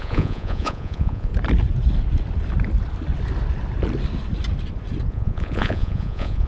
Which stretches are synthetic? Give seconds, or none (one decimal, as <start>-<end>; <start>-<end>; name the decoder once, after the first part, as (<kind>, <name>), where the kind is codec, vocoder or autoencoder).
0.0-1.3 (vocoder, Vocos); 5.1-6.5